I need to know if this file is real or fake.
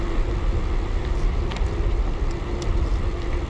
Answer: real